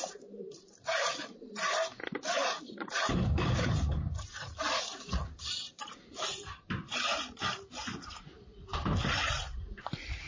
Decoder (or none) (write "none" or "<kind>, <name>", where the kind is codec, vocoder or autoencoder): vocoder, BigVGAN v2